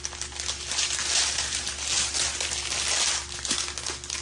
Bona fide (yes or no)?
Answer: yes